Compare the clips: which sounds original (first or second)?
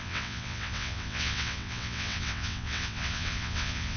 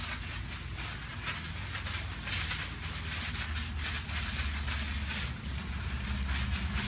second